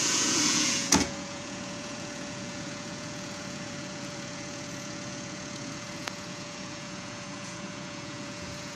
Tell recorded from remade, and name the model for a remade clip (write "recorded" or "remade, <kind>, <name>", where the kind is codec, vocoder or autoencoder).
remade, vocoder, Vocos